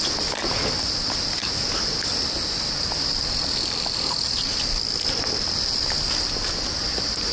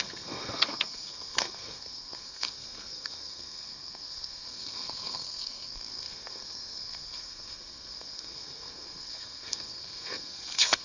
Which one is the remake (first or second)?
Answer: second